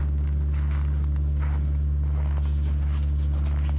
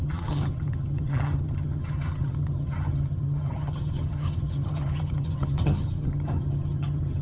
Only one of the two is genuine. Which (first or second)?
first